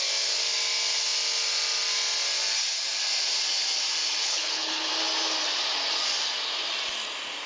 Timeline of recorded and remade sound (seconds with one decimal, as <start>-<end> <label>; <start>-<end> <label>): 0.0-4.2 recorded; 4.2-4.9 remade; 4.9-7.5 recorded